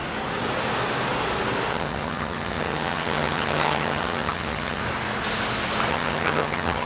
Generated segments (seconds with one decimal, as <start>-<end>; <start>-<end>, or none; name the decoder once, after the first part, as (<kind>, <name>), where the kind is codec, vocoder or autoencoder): 1.7-4.8 (vocoder, HiFi-GAN); 5.9-6.9